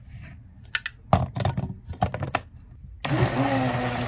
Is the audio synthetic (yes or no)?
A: no